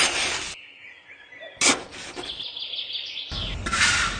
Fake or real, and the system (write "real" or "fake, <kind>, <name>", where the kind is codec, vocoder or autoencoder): real